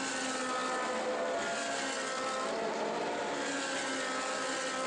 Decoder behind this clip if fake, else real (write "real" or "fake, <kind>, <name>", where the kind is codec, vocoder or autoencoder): real